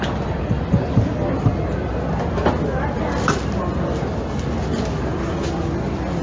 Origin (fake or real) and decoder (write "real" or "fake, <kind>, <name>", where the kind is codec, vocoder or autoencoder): real